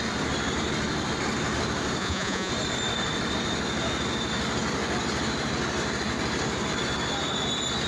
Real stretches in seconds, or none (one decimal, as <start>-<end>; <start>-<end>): 0.0-2.0; 2.5-7.9